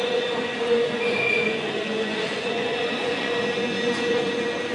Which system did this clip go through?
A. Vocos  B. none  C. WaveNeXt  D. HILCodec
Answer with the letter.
A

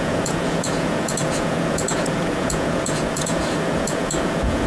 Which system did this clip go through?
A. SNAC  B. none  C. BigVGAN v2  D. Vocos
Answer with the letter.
D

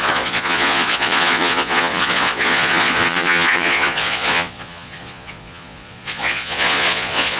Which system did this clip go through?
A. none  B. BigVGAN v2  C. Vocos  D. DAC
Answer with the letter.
C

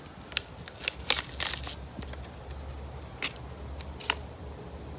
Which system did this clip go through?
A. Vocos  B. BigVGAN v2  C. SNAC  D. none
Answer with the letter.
D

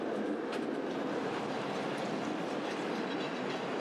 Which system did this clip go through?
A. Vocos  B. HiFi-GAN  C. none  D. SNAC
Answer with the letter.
C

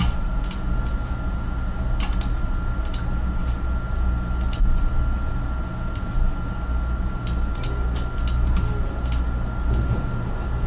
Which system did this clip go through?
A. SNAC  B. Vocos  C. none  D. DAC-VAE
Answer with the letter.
C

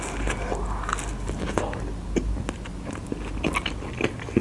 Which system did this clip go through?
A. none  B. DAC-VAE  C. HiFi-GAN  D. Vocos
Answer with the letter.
A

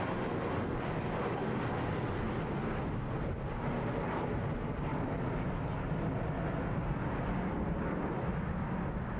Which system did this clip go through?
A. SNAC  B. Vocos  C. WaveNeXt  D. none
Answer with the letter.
D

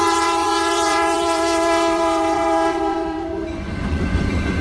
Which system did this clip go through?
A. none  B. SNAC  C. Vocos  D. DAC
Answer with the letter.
C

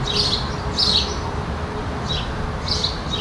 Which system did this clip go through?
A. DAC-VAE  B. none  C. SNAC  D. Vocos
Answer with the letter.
B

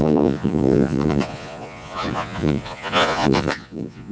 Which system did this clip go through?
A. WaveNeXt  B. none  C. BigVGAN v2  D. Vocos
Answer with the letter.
D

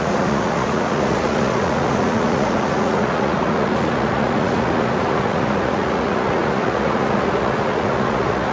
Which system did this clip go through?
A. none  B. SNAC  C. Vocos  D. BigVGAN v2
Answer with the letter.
C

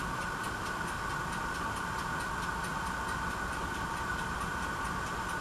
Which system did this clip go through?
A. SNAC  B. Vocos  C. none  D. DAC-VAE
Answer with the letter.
C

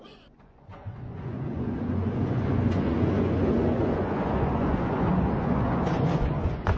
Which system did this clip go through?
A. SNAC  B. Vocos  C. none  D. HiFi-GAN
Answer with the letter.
B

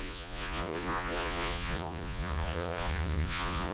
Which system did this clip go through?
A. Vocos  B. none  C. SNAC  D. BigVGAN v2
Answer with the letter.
A